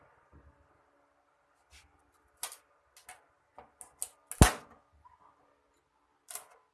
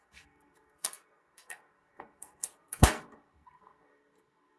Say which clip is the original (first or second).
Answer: first